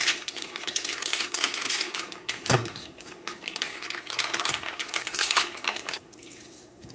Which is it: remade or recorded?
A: remade